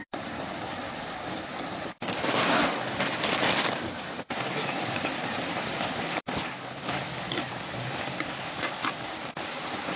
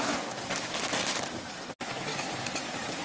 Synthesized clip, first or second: first